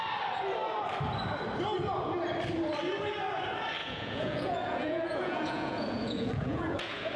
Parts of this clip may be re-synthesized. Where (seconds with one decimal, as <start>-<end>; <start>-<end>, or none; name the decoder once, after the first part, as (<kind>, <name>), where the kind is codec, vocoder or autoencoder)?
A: 3.8-7.2 (vocoder, Vocos)

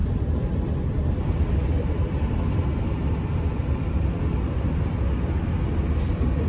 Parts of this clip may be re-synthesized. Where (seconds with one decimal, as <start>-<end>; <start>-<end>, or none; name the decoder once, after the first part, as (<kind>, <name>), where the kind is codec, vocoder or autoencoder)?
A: none

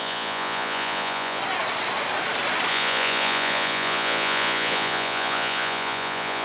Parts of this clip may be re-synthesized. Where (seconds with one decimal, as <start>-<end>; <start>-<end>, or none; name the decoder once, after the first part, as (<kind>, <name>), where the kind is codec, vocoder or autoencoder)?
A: 0.0-1.4 (vocoder, Vocos); 2.7-6.4